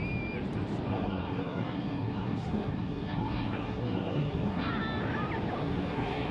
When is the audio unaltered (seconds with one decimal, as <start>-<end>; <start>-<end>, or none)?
0.0-0.9; 4.7-5.6